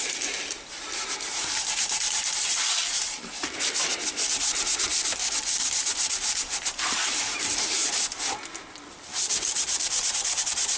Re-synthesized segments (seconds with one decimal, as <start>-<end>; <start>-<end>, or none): 0.0-2.8; 5.8-7.8; 9.1-10.8